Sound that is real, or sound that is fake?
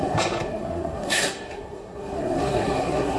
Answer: fake